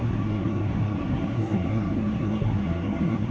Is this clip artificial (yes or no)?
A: yes